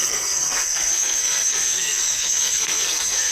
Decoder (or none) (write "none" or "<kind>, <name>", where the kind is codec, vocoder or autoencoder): codec, SNAC